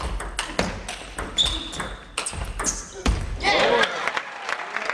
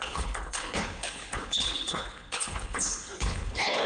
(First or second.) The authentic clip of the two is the first